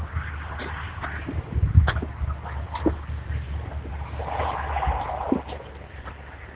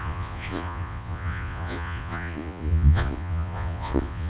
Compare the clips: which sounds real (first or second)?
first